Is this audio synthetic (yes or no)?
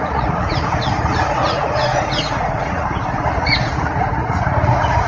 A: yes